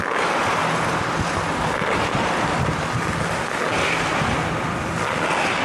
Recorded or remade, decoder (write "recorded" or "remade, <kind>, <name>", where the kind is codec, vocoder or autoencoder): recorded